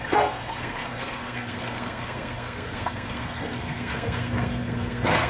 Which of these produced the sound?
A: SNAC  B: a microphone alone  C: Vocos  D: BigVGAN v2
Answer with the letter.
A